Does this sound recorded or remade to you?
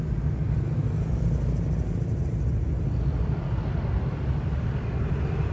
recorded